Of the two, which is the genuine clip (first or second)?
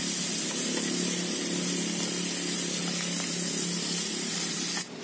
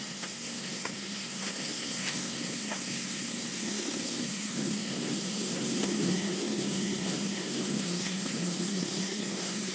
first